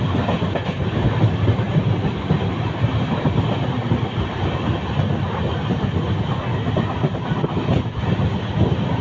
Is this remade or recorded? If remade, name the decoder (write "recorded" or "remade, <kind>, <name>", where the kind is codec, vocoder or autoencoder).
recorded